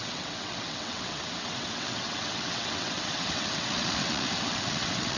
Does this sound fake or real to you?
fake